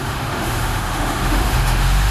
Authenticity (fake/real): fake